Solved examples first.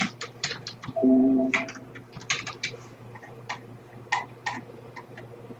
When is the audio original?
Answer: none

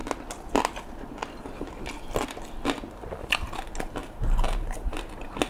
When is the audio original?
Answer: 0.0-4.0; 5.0-5.5